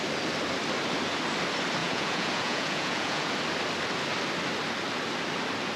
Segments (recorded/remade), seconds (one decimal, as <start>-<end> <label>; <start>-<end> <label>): 0.0-1.8 recorded; 1.8-3.3 remade; 3.3-5.8 recorded